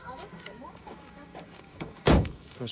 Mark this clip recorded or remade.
remade